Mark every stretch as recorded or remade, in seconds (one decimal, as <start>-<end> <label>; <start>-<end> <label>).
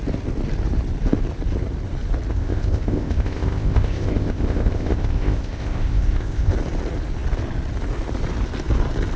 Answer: 0.0-2.3 recorded; 2.3-6.5 remade; 6.5-9.2 recorded